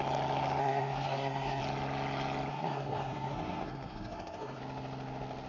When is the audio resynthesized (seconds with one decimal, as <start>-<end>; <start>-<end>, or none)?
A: 0.6-1.6; 2.5-4.6